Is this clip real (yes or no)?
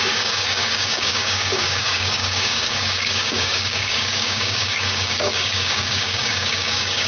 no